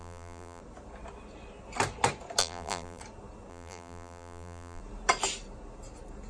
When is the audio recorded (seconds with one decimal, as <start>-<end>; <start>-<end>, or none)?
0.6-2.4; 3.0-3.5; 4.8-6.3